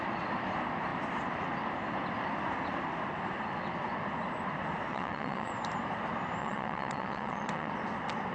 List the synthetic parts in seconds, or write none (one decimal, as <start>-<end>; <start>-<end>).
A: 4.9-5.5; 6.4-7.7